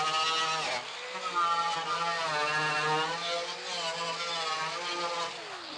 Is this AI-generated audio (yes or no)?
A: no